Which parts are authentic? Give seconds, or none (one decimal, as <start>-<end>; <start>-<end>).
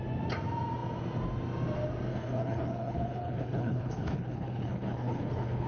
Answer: 0.0-2.1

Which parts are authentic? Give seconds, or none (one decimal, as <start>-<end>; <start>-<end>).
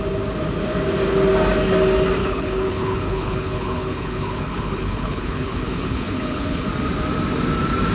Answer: 0.0-2.2; 6.7-7.9